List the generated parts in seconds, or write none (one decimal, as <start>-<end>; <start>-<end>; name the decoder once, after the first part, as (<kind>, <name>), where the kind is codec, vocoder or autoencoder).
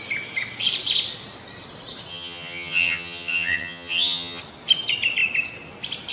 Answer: 2.1-4.4 (vocoder, HiFi-GAN)